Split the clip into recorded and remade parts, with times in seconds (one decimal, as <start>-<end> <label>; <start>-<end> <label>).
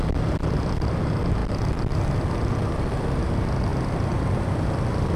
0.0-5.2 recorded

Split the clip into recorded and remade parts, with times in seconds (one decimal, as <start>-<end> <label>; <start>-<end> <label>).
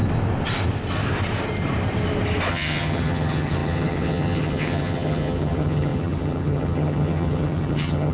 0.0-2.5 recorded; 2.5-8.1 remade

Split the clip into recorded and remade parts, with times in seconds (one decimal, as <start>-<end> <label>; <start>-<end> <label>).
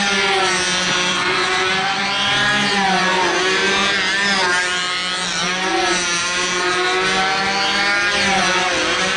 0.0-1.1 recorded; 1.1-2.0 remade; 2.0-9.2 recorded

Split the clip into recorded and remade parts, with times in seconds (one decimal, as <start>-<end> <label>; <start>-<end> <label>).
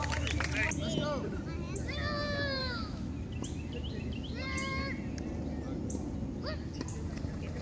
0.0-2.6 recorded; 2.6-3.1 remade; 3.1-7.6 recorded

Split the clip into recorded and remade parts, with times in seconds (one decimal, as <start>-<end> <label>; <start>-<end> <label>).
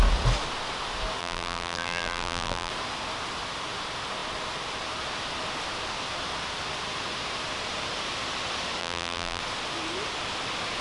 0.0-1.2 recorded; 1.2-2.7 remade; 2.7-8.8 recorded; 8.8-9.4 remade; 9.4-10.8 recorded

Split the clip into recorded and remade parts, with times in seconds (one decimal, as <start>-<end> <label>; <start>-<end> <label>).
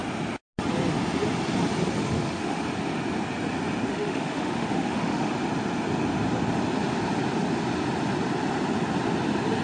0.0-2.0 recorded; 2.0-2.6 remade; 2.6-3.9 recorded; 3.9-5.3 remade; 5.3-9.6 recorded